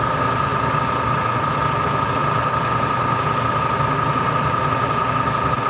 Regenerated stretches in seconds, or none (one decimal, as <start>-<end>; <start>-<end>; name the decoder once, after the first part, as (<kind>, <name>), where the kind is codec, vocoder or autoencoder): none